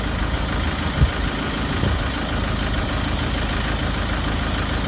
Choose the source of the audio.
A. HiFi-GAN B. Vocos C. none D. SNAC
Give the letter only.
C